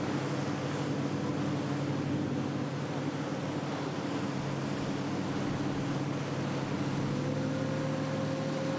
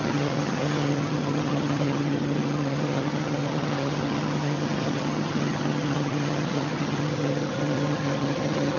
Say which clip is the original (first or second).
first